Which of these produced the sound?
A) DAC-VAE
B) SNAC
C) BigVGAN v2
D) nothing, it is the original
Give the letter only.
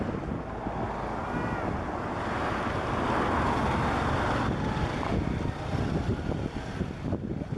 D